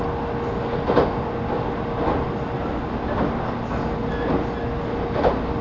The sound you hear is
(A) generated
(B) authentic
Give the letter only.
B